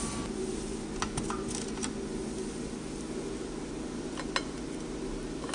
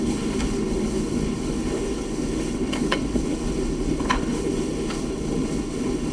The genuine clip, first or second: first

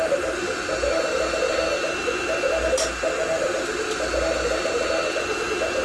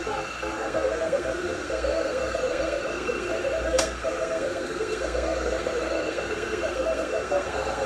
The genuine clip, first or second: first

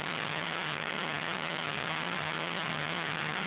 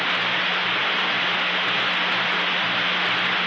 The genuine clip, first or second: second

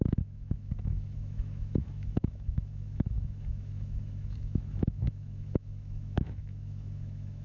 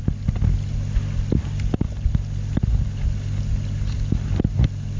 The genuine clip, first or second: second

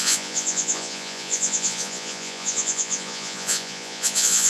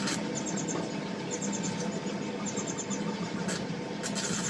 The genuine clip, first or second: second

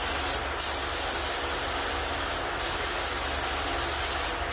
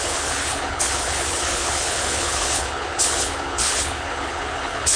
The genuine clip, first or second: first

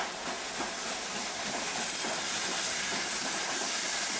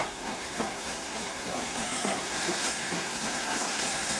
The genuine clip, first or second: first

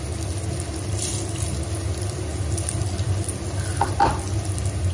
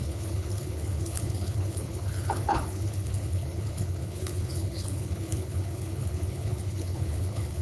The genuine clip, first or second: first